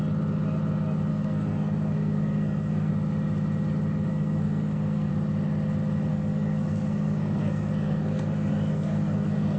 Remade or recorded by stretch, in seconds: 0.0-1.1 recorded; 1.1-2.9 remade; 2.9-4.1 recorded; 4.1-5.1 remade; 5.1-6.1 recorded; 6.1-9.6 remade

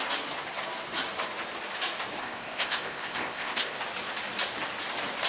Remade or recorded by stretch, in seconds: 0.0-2.2 recorded; 2.2-3.8 remade; 3.8-5.3 recorded

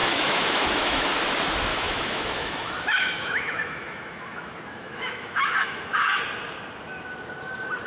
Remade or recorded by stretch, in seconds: 0.0-1.1 remade; 1.1-1.7 recorded; 1.7-6.2 remade; 6.2-7.9 recorded

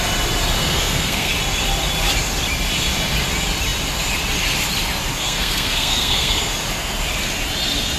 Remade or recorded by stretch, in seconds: 0.0-0.6 recorded; 0.6-1.3 remade; 1.3-5.2 recorded; 5.2-6.5 remade; 6.5-8.0 recorded